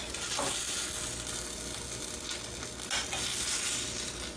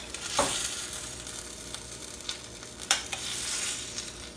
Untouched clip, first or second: first